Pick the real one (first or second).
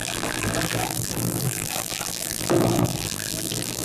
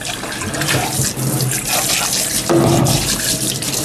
second